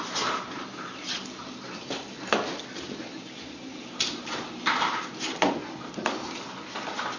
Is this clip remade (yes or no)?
no